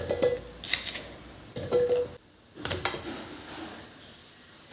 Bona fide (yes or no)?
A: yes